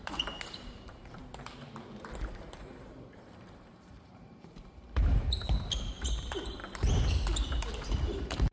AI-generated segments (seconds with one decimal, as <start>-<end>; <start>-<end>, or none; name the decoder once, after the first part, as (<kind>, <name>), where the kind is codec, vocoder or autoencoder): 0.0-1.2 (vocoder, BigVGAN v2); 2.3-6.6; 7.8-8.5